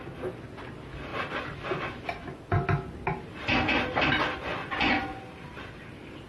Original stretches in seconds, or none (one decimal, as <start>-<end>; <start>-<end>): 0.0-4.6; 5.2-6.3